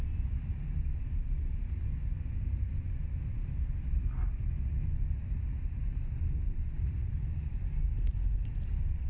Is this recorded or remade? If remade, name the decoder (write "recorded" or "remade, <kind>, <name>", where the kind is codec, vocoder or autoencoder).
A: recorded